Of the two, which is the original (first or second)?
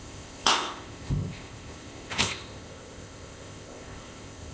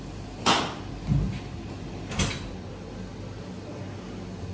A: second